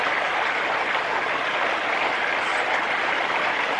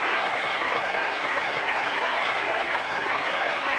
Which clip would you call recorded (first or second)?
first